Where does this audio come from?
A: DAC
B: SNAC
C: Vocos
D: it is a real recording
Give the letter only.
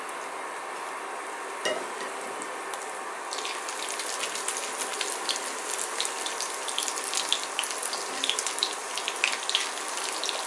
D